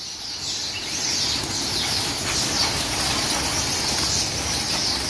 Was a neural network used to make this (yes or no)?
no